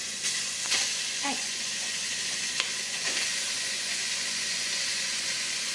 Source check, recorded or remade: remade